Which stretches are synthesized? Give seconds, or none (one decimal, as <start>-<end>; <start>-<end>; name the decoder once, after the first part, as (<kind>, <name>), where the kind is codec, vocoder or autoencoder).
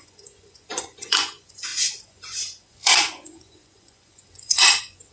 0.0-5.1 (vocoder, Vocos)